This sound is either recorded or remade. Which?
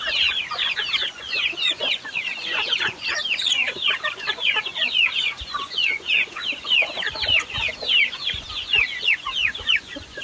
remade